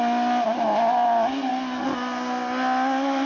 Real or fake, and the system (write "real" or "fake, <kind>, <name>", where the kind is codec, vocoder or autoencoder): real